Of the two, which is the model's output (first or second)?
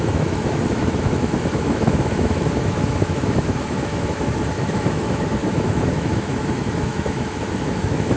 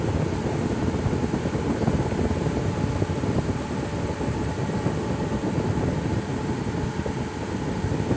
first